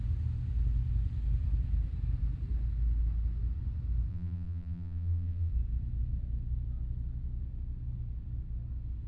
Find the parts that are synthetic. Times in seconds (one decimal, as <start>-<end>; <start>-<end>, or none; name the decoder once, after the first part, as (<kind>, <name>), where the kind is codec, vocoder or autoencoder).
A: 4.1-5.5 (vocoder, BigVGAN v2)